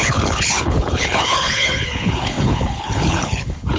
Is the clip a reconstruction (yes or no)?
yes